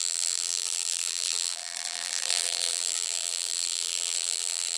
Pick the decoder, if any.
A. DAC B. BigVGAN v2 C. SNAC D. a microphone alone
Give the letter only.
B